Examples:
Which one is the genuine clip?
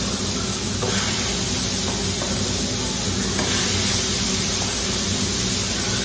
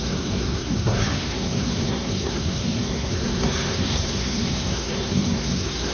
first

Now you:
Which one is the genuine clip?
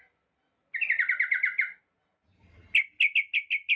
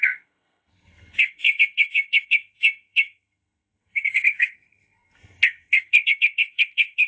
first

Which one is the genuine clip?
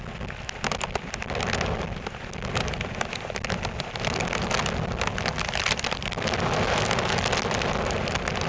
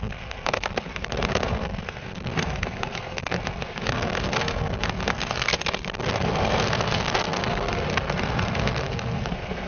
first